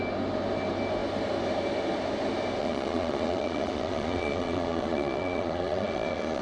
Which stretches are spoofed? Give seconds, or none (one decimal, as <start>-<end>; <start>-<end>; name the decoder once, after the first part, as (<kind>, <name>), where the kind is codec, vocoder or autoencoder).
2.6-6.4 (vocoder, Vocos)